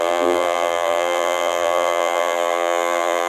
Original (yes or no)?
no